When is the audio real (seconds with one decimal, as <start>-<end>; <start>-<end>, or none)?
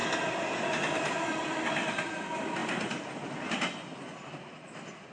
0.0-5.1